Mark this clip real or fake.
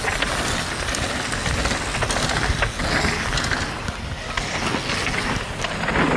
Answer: real